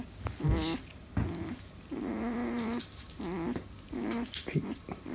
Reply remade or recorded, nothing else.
recorded